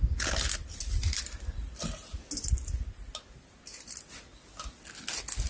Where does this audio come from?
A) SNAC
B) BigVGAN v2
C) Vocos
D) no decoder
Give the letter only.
D